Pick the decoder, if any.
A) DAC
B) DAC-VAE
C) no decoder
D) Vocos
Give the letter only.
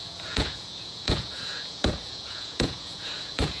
D